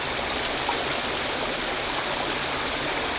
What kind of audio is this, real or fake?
real